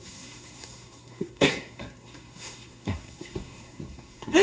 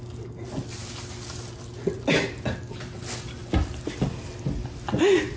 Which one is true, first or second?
second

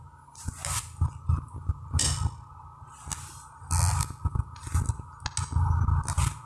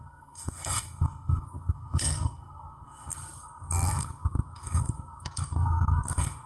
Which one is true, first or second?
first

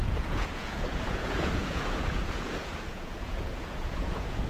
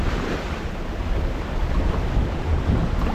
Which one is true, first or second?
second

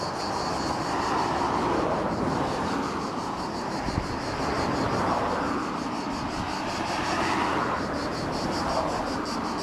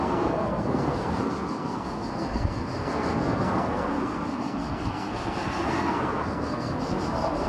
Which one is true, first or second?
first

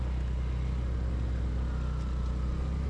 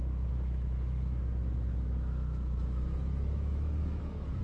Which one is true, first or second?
first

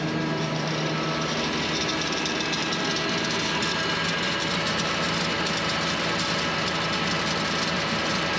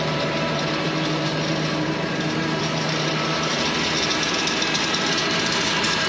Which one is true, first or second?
first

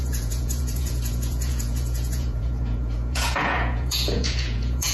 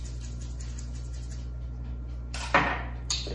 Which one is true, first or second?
second